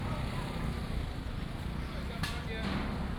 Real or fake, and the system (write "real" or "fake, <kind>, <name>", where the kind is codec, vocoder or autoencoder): real